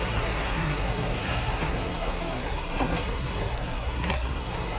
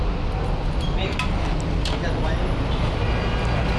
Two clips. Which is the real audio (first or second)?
second